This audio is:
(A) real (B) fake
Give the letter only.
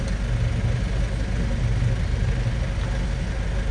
A